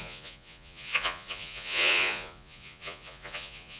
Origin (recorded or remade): remade